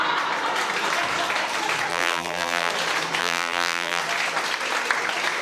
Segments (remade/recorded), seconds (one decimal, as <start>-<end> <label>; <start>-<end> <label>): 0.0-1.9 recorded; 1.9-2.7 remade; 2.7-3.2 recorded; 3.2-4.0 remade; 4.0-5.4 recorded